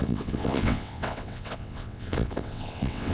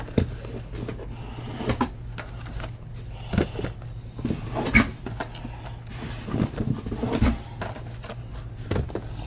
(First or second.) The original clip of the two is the second